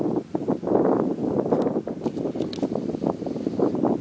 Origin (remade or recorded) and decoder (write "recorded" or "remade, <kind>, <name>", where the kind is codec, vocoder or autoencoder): recorded